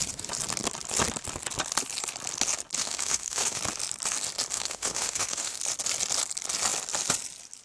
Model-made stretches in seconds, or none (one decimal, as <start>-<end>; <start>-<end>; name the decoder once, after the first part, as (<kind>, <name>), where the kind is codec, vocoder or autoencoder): 2.8-3.6 (autoencoder, DAC-VAE); 4.5-5.6